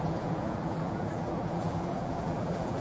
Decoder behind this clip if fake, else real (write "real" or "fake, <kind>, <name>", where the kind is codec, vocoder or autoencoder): fake, vocoder, BigVGAN v2